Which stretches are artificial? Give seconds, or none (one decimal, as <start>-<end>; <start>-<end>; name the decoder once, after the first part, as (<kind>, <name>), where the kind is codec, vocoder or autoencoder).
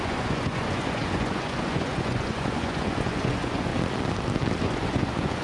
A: 0.0-3.7 (vocoder, Vocos); 4.6-5.4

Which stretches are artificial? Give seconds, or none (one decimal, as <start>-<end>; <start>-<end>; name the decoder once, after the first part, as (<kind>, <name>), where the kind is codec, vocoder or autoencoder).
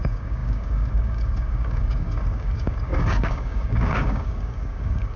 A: 0.0-5.2 (codec, DAC)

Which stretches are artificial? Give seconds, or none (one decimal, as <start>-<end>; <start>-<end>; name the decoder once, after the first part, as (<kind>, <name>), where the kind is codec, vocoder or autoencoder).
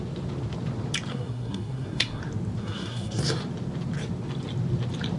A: 1.1-2.2 (codec, SNAC); 2.6-3.2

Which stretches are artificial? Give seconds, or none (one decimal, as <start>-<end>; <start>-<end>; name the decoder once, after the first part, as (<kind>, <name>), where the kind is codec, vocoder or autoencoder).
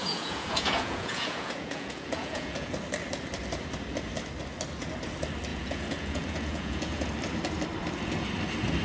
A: 0.0-2.7 (vocoder, Vocos); 5.5-7.1